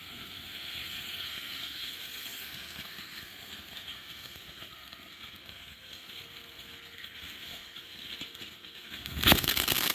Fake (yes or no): yes